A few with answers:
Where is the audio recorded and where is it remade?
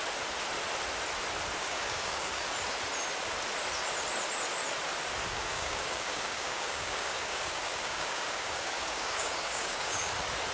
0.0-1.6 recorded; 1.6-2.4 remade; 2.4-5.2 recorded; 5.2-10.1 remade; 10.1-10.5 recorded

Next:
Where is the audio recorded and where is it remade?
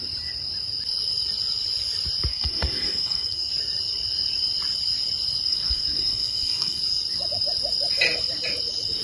0.0-2.3 recorded; 2.3-3.5 remade; 3.5-5.5 recorded; 5.5-6.8 remade; 6.8-9.0 recorded